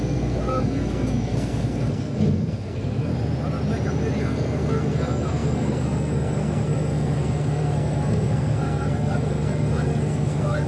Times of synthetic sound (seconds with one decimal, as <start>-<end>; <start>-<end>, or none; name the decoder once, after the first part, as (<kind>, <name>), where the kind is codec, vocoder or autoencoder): 0.0-3.1 (codec, SNAC); 4.2-10.7